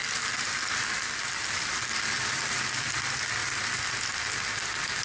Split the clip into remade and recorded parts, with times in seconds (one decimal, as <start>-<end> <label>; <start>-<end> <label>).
0.0-5.0 recorded